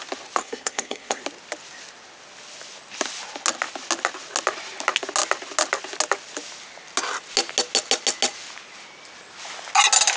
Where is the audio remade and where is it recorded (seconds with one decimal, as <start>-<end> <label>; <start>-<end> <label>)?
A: 0.0-0.4 recorded; 0.4-1.2 remade; 1.2-10.2 recorded